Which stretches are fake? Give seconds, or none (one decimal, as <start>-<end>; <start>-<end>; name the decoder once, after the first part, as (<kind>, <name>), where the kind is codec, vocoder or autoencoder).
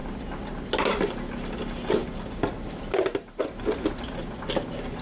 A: none